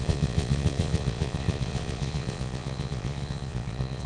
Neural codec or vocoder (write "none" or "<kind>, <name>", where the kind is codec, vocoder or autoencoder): vocoder, Vocos